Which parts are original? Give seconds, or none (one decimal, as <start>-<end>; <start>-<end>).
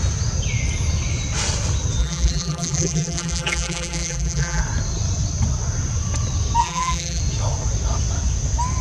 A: 0.0-2.0; 4.6-6.6; 7.2-8.8